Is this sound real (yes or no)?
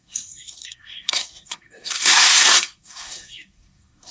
no